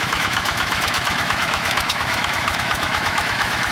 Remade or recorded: remade